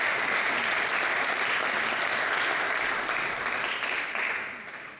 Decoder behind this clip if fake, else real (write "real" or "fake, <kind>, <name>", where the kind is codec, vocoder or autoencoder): real